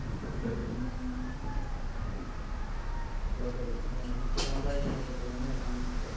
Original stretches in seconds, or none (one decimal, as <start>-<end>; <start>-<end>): 0.0-6.2